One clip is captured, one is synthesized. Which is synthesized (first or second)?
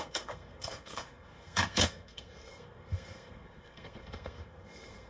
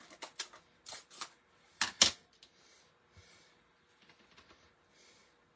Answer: first